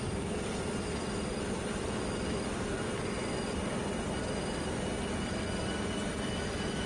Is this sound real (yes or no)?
yes